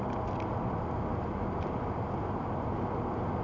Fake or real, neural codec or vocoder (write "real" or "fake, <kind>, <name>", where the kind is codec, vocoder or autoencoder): real